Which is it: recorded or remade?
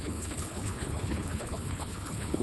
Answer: remade